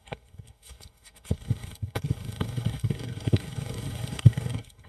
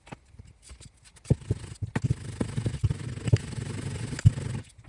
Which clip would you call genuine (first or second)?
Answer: second